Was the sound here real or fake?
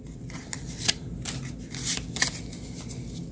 real